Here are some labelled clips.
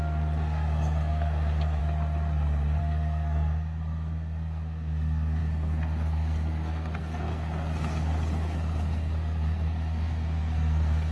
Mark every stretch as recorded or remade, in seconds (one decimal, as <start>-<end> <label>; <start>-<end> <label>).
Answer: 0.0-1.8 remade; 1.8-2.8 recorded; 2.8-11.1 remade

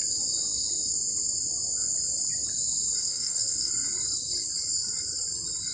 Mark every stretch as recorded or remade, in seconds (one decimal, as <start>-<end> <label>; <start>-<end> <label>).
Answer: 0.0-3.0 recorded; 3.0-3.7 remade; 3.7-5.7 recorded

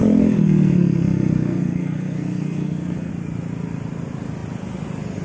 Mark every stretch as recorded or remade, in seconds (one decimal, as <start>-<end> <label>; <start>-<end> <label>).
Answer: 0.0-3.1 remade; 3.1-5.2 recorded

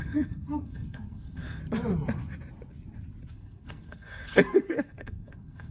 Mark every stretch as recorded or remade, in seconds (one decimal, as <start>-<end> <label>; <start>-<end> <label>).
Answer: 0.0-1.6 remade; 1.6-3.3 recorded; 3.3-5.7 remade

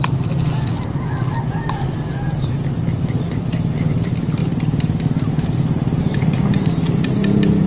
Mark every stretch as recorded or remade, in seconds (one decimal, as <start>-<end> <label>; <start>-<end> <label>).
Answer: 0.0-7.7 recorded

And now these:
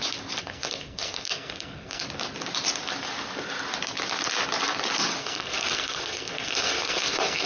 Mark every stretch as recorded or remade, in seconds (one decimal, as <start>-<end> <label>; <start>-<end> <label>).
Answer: 0.0-0.4 recorded; 0.4-2.0 remade; 2.0-5.2 recorded; 5.2-7.5 remade

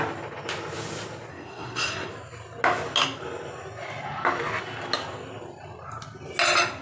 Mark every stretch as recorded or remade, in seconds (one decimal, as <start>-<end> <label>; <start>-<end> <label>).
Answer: 0.0-1.3 recorded; 1.3-2.1 remade; 2.1-6.8 recorded